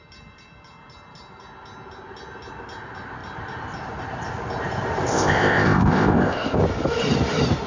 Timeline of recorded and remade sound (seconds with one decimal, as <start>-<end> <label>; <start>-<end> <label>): 0.0-5.1 recorded; 5.1-6.6 remade; 6.6-7.7 recorded